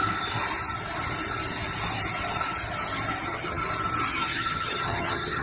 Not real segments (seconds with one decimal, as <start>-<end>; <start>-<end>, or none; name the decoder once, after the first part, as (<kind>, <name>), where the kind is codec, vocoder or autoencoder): 3.2-3.6 (vocoder, HiFi-GAN); 4.1-5.4